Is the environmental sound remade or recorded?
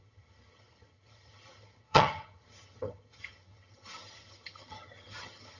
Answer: remade